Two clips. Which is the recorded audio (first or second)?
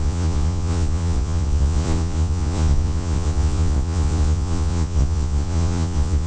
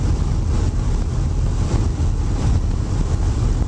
second